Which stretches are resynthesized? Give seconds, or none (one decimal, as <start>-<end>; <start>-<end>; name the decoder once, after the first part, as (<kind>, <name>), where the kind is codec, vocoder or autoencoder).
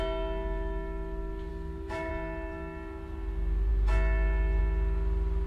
1.5-2.1 (codec, DAC)